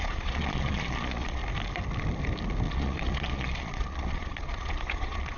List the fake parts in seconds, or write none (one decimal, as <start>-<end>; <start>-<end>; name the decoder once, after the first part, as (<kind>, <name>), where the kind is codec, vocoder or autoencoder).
0.0-1.4 (vocoder, Vocos); 2.7-5.4